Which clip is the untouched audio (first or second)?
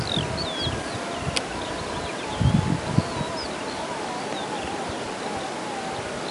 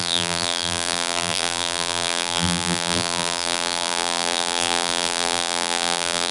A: first